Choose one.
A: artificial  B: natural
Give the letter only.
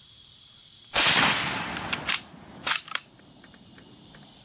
A